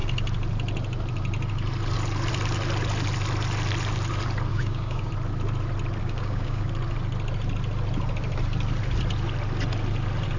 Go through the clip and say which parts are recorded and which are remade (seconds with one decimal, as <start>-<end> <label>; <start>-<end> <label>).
0.0-4.5 recorded; 4.5-5.1 remade; 5.1-6.0 recorded; 6.0-6.7 remade; 6.7-10.4 recorded